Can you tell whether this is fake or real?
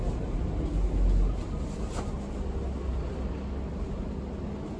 real